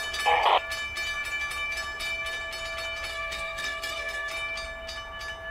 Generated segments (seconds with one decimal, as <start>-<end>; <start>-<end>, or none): 3.1-4.3